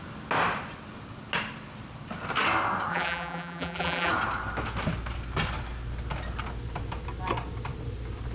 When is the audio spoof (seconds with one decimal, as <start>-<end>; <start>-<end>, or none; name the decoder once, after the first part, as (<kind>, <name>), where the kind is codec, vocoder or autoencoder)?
2.9-4.1 (vocoder, BigVGAN v2)